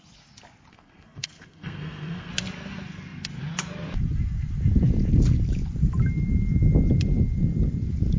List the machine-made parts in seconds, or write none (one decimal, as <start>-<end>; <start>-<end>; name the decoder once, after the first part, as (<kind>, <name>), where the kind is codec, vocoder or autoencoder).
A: 0.7-2.3 (codec, SNAC)